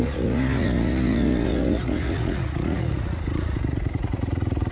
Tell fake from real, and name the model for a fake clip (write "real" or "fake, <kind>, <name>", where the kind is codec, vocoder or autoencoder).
fake, vocoder, Vocos